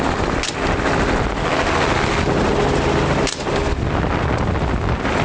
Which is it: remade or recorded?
recorded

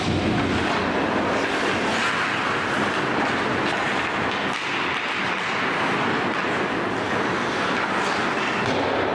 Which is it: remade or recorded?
recorded